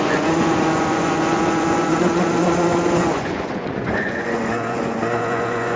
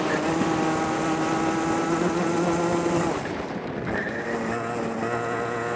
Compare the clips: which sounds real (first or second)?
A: second